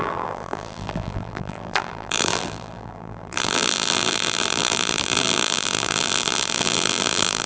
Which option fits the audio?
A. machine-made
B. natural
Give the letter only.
A